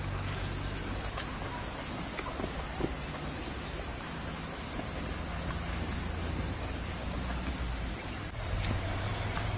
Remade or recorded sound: recorded